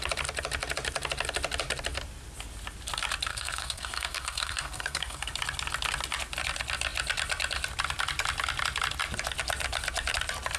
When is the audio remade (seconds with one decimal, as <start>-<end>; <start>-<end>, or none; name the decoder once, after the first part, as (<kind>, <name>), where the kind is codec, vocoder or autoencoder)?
3.3-5.3 (codec, SNAC)